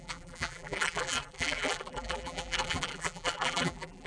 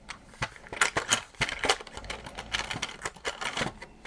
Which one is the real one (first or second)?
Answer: second